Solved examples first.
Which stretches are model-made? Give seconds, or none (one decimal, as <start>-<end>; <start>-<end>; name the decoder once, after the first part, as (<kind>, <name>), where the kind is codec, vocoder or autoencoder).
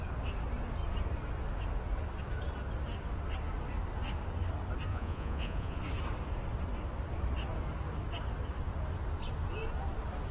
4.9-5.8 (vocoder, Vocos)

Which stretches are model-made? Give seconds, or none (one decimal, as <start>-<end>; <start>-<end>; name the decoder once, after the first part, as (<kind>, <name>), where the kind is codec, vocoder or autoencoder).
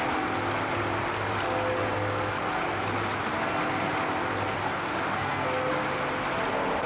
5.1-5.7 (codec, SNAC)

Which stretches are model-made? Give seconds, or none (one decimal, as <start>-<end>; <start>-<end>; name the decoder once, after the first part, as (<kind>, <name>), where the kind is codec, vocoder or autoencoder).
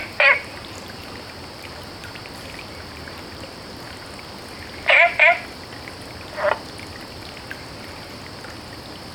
0.0-4.3 (vocoder, BigVGAN v2)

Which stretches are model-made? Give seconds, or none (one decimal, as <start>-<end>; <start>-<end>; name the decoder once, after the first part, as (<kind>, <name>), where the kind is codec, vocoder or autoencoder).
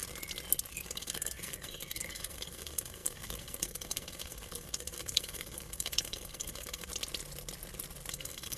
0.7-6.9 (codec, SNAC); 8.1-8.6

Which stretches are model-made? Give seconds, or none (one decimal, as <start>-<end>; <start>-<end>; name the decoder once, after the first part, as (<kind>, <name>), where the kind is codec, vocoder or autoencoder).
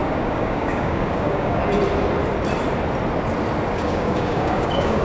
0.0-1.6 (codec, DAC); 3.7-5.0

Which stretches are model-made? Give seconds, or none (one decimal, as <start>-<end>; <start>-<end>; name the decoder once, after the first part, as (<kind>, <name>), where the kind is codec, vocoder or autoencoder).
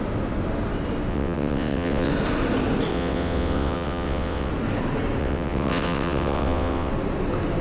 1.1-2.1 (vocoder, WaveNeXt); 2.9-4.5; 5.2-6.9